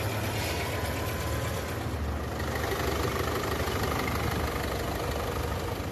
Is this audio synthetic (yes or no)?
no